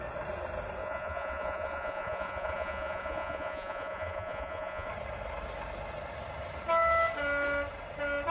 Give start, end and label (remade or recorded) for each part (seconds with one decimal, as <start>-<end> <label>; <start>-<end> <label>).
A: 0.0-0.8 recorded; 0.8-4.9 remade; 4.9-8.3 recorded